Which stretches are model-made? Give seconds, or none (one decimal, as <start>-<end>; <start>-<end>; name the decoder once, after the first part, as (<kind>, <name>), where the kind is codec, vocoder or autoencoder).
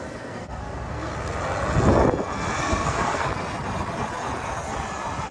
0.0-1.1 (codec, SNAC); 2.6-3.3